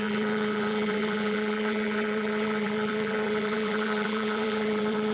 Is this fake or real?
fake